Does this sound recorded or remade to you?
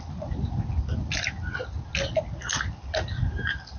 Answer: recorded